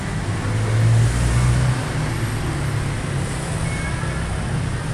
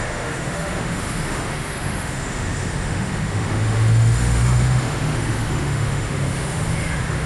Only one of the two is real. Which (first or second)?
first